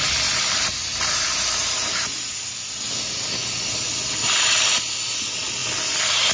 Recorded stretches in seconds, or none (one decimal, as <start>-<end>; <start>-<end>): 0.0-6.3